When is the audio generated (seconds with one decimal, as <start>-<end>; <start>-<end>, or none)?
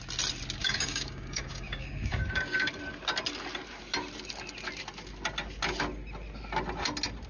0.6-2.7